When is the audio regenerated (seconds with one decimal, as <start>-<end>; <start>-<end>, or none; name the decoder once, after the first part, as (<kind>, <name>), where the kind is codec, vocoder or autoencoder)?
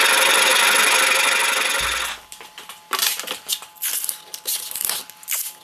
4.3-4.9 (vocoder, BigVGAN v2)